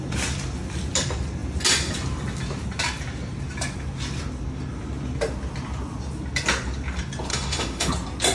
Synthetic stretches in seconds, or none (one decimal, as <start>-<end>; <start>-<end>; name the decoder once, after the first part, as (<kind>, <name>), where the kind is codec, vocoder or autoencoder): 7.3-7.9 (autoencoder, DAC-VAE)